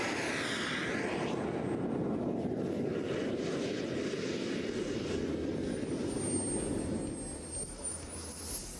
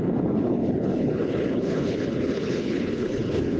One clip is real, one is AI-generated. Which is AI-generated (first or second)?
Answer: second